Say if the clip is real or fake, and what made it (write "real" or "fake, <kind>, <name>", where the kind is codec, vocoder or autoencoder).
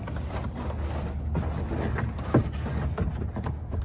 real